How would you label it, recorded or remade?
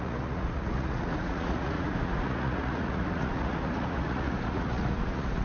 remade